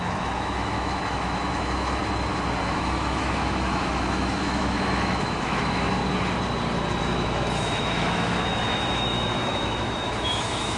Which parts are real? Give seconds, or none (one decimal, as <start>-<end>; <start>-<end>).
2.0-2.6; 6.0-7.0